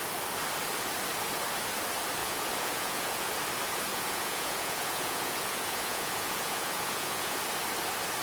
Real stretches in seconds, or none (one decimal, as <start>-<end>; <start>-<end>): 0.0-2.2; 3.3-3.9; 7.4-8.2